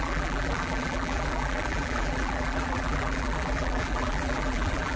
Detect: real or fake fake